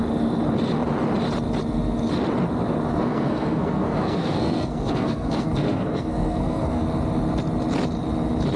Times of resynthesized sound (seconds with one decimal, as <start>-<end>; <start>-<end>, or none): 2.9-6.8